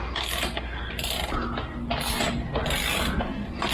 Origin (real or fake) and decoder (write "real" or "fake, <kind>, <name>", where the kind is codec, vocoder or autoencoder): real